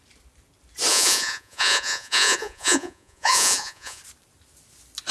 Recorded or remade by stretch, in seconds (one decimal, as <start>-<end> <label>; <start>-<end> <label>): 0.0-0.9 recorded; 0.9-4.0 remade; 4.0-5.1 recorded

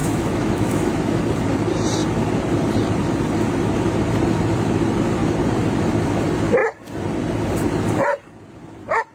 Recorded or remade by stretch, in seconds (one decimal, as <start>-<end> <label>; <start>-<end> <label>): 0.0-1.2 remade; 1.2-9.1 recorded

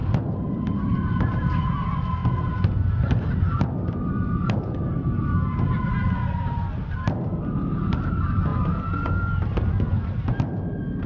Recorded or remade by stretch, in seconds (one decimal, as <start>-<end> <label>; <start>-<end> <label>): 0.0-0.5 recorded; 0.5-11.1 remade